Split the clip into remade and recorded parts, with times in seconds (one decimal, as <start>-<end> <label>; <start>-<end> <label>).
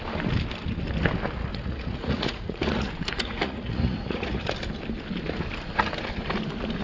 0.0-1.5 recorded; 1.5-4.5 remade; 4.5-6.8 recorded